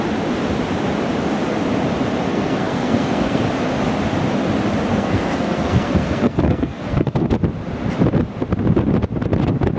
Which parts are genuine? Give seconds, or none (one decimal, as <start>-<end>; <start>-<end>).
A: 0.0-2.3; 3.4-4.9; 7.3-9.8